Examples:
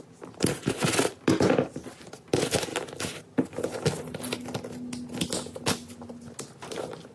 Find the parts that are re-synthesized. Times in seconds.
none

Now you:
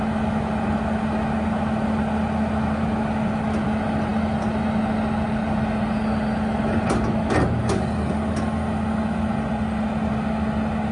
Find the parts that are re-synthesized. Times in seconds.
none

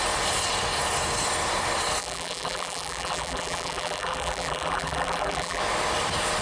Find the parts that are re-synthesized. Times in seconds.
2.0-5.6 (vocoder, BigVGAN v2)

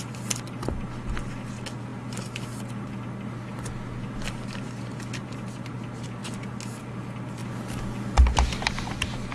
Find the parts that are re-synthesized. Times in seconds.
none

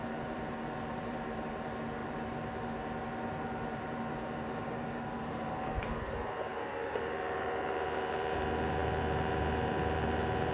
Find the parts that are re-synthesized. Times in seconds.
0.0-10.5 (vocoder, BigVGAN v2)

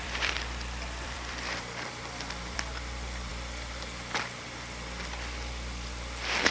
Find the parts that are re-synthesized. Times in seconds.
0.0-3.3 (vocoder, BigVGAN v2)

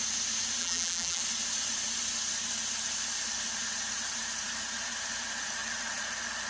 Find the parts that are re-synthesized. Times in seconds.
0.6-1.2 (vocoder, BigVGAN v2)